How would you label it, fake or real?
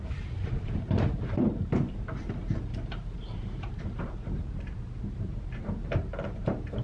fake